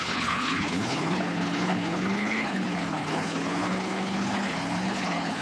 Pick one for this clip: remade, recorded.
remade